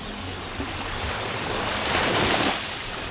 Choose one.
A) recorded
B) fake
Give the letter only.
A